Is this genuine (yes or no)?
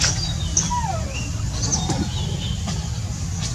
yes